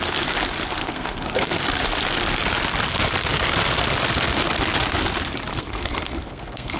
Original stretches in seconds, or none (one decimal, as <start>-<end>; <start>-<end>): 0.0-0.8; 1.6-5.5